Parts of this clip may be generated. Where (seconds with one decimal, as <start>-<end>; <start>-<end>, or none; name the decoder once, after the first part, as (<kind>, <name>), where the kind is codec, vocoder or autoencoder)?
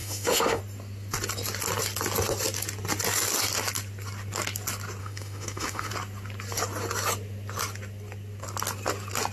0.0-0.6 (autoencoder, DAC-VAE); 5.0-5.9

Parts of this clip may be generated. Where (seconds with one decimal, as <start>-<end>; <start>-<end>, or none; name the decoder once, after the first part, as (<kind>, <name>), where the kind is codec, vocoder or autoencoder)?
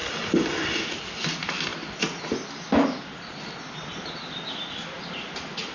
none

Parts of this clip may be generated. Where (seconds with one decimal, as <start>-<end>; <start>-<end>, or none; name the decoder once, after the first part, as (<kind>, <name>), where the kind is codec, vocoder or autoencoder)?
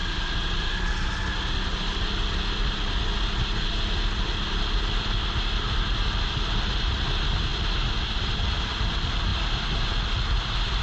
none